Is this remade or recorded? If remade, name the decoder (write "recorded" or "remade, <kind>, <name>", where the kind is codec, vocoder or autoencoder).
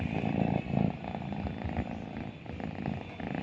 recorded